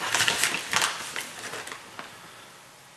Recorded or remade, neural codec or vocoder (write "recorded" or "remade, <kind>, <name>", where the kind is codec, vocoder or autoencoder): recorded